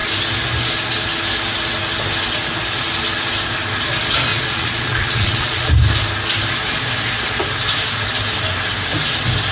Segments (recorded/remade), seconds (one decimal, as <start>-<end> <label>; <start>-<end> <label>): 0.0-4.3 recorded; 4.3-5.7 remade; 5.7-9.5 recorded